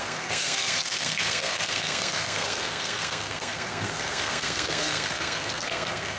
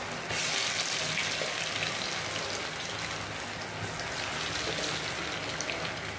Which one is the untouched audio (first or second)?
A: second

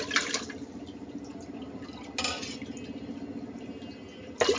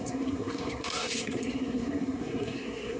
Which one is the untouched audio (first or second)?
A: first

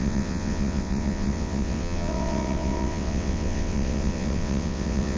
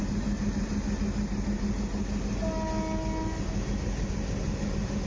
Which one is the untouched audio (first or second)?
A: second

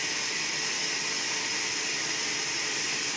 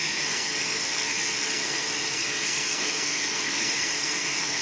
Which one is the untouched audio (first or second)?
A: first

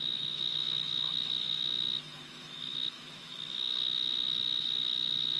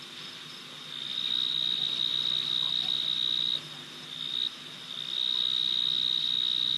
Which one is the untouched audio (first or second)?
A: second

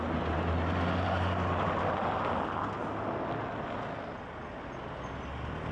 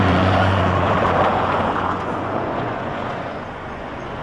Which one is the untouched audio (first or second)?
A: first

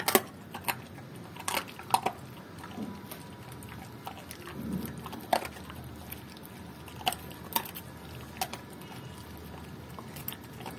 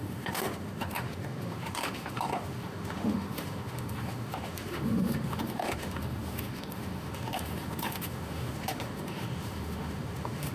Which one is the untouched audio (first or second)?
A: first